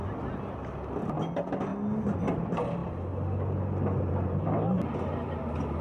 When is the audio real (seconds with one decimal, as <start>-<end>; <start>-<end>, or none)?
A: 0.0-5.8

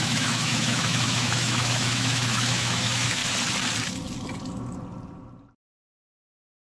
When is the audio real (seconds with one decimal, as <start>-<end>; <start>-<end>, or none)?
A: 3.2-6.6

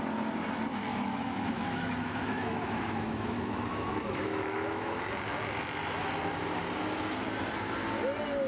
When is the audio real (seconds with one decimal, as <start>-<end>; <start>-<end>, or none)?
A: 0.0-0.7; 5.0-8.5

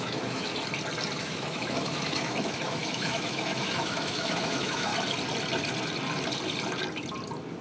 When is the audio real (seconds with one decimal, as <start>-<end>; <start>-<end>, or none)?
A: 0.5-1.2; 4.9-7.6

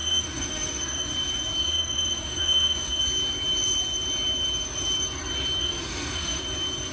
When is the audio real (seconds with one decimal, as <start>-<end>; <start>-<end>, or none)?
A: 1.1-1.6; 3.0-5.6; 6.4-6.9

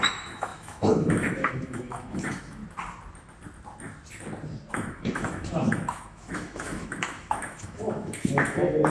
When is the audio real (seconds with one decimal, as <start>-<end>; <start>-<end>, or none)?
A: 2.6-4.7

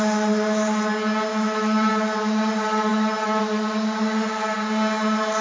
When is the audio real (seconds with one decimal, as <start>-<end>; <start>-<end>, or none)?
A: 0.0-1.3; 1.9-2.9; 3.4-5.4

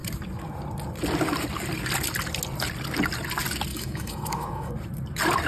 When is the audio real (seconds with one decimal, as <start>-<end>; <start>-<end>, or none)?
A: 0.0-3.7; 4.7-5.5